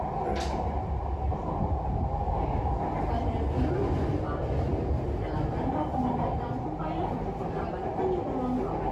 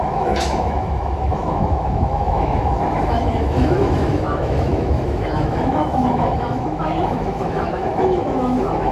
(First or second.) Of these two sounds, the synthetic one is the second